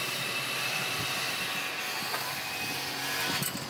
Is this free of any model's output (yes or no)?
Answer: no